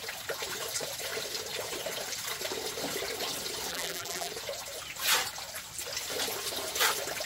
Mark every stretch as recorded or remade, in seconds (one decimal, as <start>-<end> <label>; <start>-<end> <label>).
0.0-3.7 recorded; 3.7-4.3 remade; 4.3-7.3 recorded